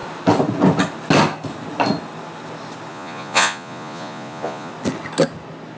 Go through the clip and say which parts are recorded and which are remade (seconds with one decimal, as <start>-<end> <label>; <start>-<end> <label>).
0.0-2.9 recorded; 2.9-4.7 remade; 4.7-5.8 recorded